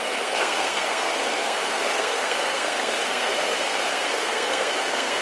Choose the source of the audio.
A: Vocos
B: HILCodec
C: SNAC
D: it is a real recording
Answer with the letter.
C